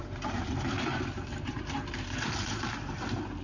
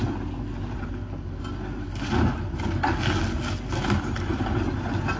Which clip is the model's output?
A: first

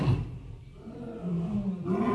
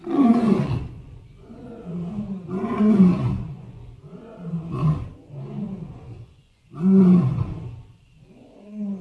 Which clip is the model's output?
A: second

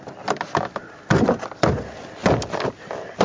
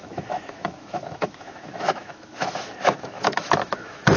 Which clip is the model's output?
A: second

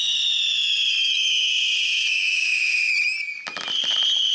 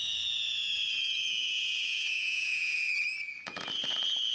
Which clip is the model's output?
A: second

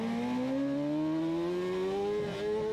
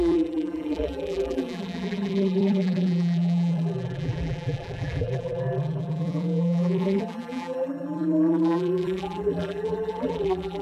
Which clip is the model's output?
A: second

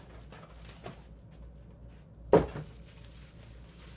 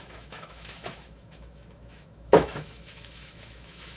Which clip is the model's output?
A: second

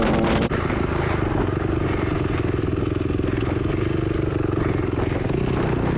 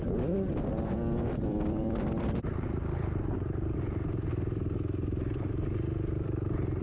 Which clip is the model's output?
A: second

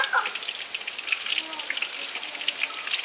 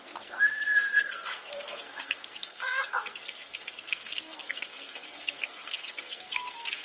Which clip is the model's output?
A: second